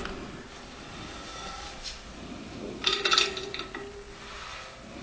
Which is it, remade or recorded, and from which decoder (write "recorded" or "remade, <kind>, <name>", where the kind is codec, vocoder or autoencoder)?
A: recorded